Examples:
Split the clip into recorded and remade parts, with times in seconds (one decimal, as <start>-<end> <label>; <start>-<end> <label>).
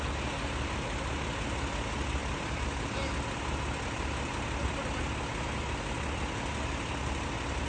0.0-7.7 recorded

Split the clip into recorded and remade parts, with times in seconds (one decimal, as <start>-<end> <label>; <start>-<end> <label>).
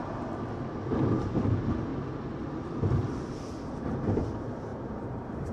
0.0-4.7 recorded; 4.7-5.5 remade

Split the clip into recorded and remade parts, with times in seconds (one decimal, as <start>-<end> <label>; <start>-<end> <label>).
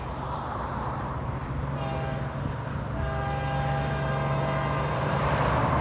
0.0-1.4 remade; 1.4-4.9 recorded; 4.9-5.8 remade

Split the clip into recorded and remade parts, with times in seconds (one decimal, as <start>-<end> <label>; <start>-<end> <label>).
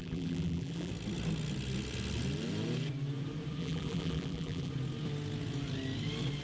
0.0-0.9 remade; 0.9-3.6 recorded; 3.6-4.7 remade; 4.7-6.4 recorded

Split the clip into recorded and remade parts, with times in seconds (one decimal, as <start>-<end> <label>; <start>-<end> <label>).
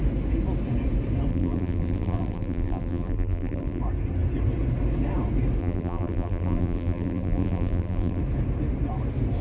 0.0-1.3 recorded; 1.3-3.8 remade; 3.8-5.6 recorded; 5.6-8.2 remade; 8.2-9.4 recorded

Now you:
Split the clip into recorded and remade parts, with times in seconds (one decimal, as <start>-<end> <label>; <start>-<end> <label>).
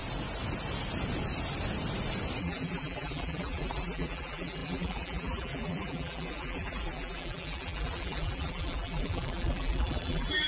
0.0-2.4 recorded; 2.4-10.5 remade